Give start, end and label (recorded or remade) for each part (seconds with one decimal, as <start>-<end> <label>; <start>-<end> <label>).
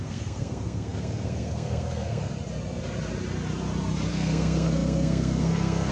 0.0-2.3 remade; 2.3-4.1 recorded; 4.1-5.9 remade